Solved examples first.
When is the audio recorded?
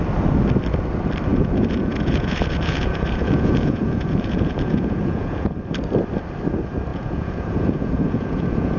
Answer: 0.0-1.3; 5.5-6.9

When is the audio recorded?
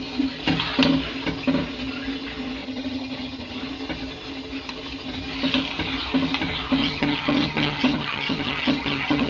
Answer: 0.0-2.6; 3.6-6.8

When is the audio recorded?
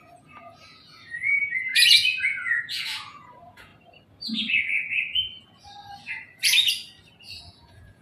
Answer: 3.7-7.4